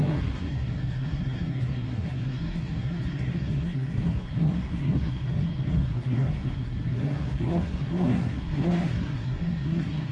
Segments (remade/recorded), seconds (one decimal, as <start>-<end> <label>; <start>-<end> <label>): 0.0-10.1 remade